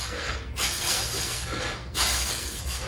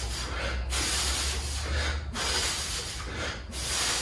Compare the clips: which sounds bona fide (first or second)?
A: second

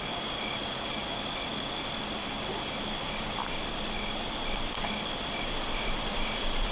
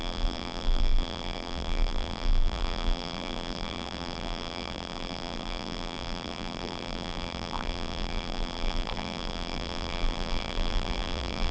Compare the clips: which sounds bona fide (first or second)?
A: first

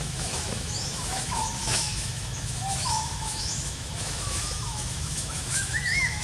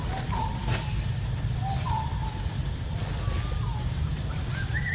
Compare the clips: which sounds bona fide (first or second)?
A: second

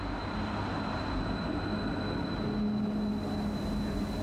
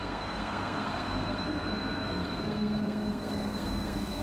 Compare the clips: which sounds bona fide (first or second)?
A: first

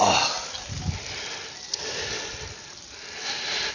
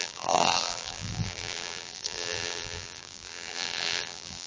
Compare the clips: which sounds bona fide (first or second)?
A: first